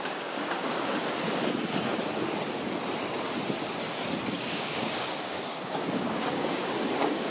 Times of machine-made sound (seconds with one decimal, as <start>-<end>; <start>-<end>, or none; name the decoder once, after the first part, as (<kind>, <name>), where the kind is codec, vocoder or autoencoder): 0.0-1.0 (codec, DAC); 4.3-7.3